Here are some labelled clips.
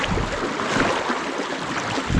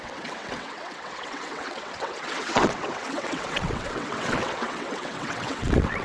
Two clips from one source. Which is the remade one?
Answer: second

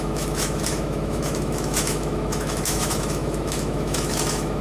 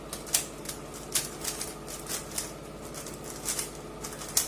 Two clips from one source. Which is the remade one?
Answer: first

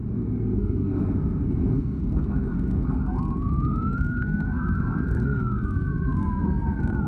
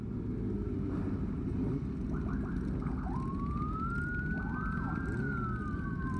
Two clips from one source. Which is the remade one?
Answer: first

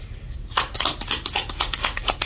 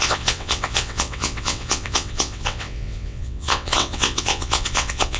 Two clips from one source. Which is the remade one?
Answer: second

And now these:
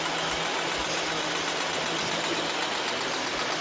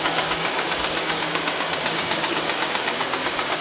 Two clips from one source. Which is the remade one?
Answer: second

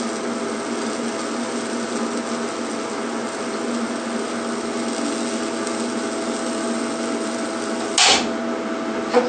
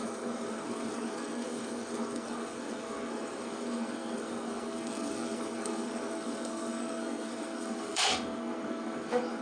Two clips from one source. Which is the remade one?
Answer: second